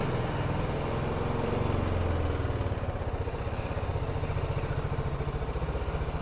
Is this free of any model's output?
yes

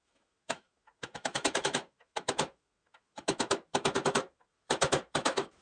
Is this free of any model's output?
no